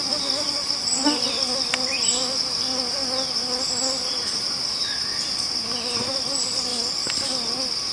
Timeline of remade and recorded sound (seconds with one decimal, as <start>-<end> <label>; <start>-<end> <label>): 0.0-3.0 remade; 3.0-6.1 recorded; 6.1-6.7 remade; 6.7-7.9 recorded